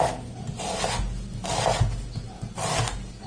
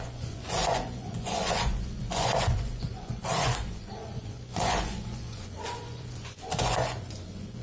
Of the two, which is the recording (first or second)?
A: first